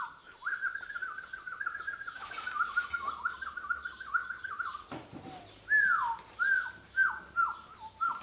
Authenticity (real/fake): real